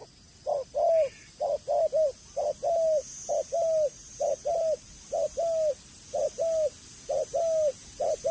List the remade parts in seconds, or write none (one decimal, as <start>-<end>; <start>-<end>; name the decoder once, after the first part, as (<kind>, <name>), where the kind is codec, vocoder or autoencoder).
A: none